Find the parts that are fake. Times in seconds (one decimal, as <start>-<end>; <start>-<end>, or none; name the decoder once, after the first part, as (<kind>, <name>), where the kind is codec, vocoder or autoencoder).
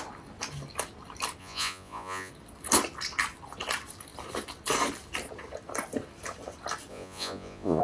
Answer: 1.4-2.3 (vocoder, Vocos); 6.9-7.8